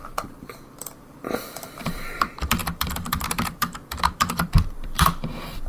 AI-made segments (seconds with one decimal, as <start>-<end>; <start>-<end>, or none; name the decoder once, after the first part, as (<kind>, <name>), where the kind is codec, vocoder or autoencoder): 0.0-5.7 (vocoder, BigVGAN v2)